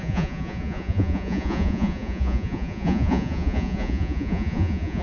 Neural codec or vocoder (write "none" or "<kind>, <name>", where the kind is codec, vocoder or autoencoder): vocoder, Vocos